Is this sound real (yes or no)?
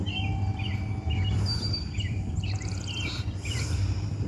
no